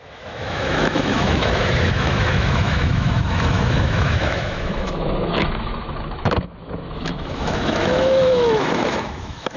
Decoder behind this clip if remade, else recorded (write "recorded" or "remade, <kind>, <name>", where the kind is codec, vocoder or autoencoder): remade, autoencoder, DAC-VAE